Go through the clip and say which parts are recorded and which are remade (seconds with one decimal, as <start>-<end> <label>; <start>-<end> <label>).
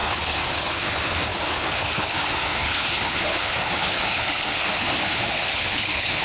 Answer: 0.0-6.2 remade